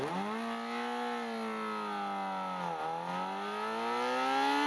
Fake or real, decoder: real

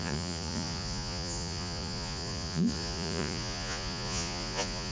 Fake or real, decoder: fake, vocoder, Vocos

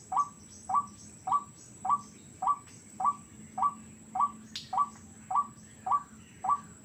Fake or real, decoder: real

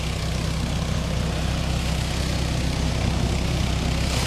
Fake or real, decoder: real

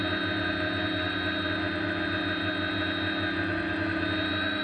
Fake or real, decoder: real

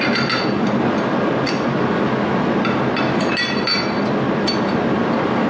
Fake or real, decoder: real